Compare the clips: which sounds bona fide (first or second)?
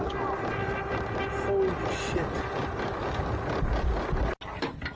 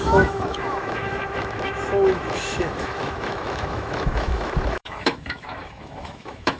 first